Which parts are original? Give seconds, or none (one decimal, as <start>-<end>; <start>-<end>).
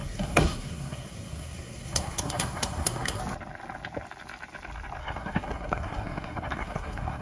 3.2-5.0